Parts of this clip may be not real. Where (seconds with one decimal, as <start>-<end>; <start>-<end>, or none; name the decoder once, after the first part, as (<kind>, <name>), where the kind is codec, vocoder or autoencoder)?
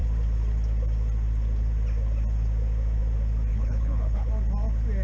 3.5-4.3 (codec, HILCodec)